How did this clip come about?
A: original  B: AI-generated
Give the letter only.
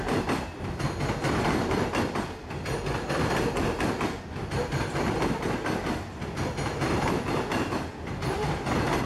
A